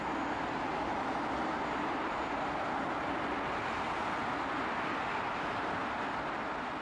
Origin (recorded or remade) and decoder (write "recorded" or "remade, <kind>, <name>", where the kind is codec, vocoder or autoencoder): recorded